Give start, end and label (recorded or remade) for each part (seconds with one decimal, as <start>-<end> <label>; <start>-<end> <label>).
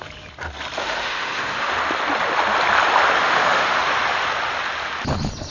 0.0-0.8 recorded; 0.8-1.7 remade; 1.7-3.2 recorded; 3.2-3.8 remade; 3.8-5.5 recorded